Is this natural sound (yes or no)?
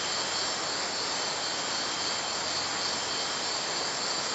yes